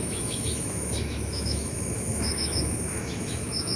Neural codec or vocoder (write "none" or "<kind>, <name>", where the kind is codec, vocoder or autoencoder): autoencoder, DAC-VAE